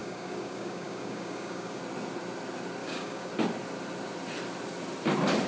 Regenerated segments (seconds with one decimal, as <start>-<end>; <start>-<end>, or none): 0.0-1.8; 2.8-3.3